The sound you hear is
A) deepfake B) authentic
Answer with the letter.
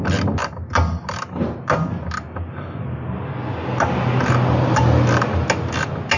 B